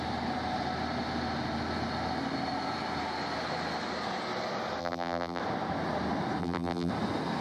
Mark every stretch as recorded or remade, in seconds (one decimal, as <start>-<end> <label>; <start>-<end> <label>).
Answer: 0.0-4.8 recorded; 4.8-5.4 remade; 5.4-6.4 recorded; 6.4-6.9 remade; 6.9-7.4 recorded